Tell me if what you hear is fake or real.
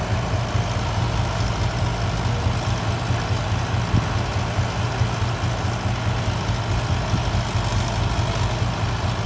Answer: real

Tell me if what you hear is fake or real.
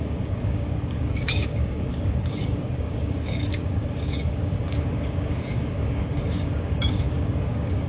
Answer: fake